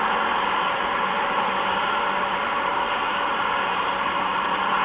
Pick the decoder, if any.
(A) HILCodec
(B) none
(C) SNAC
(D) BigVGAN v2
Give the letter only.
D